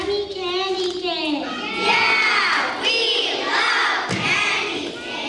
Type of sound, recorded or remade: recorded